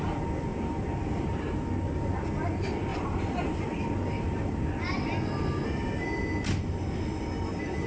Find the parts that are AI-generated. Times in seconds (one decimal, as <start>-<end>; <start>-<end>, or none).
0.5-1.3; 2.9-4.7